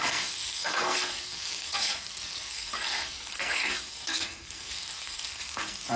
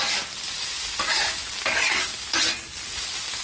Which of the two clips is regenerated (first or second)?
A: first